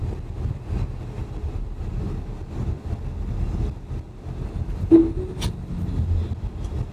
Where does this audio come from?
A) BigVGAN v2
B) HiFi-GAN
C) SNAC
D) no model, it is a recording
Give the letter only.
D